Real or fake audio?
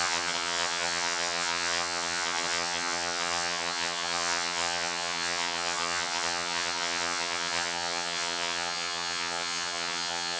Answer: fake